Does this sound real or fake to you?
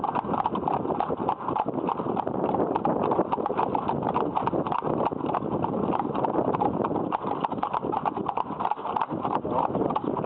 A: real